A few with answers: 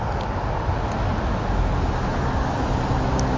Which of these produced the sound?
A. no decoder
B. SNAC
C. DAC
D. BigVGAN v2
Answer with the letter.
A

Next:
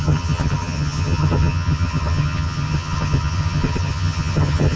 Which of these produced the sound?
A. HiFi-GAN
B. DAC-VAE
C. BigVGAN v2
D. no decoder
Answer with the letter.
A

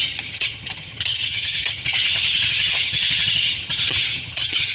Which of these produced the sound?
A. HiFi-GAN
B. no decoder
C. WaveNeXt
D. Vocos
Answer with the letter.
A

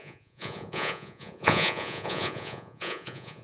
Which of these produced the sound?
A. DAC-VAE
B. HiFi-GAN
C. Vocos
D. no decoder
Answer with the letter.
C